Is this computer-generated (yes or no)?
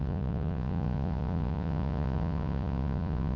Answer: yes